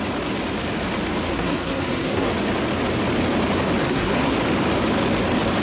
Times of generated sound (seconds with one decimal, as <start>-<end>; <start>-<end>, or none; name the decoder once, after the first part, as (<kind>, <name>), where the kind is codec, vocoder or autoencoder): 1.3-2.3 (codec, SNAC); 3.8-4.3